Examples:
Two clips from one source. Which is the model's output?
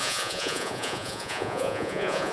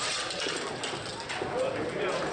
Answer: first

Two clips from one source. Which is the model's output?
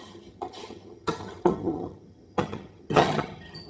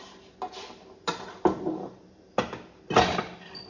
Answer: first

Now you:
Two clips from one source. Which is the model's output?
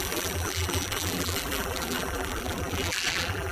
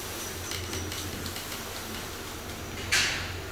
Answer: first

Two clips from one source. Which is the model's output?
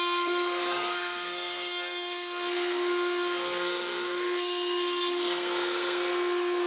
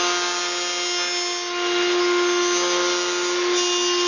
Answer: first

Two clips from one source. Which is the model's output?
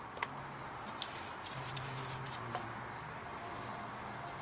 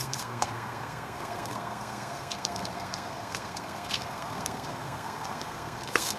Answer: second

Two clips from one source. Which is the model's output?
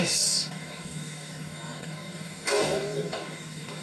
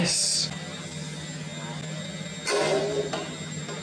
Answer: first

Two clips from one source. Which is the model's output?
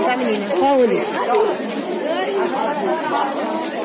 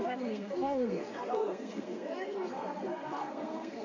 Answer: second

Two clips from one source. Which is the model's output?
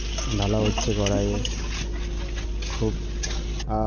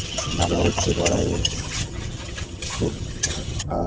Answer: second